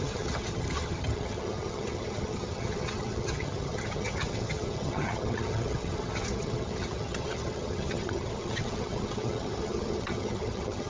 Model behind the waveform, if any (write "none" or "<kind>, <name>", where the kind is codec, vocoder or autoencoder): vocoder, HiFi-GAN